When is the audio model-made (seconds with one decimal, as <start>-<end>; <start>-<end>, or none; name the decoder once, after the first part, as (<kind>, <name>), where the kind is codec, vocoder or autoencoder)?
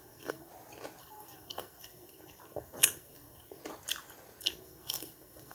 0.0-0.5 (codec, SNAC); 1.0-3.6; 4.4-5.5